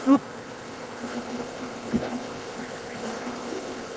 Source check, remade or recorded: remade